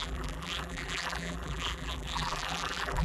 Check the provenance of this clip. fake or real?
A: fake